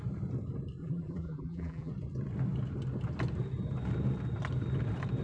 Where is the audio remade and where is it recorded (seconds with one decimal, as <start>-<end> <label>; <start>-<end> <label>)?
0.0-0.8 recorded; 0.8-1.9 remade; 1.9-5.2 recorded